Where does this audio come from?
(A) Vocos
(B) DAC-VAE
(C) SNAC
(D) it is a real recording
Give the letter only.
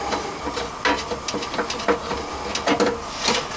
D